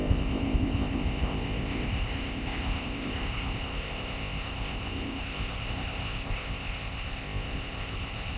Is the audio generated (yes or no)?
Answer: yes